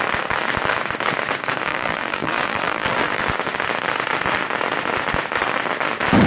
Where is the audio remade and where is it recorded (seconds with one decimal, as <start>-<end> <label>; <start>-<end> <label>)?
0.0-1.7 recorded; 1.7-3.2 remade; 3.2-6.3 recorded